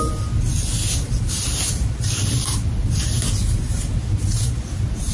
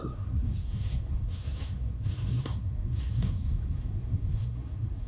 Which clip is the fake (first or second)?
second